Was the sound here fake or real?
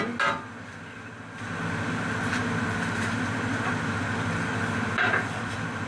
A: real